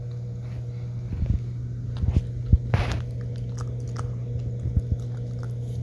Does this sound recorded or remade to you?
recorded